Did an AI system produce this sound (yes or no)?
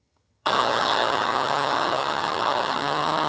yes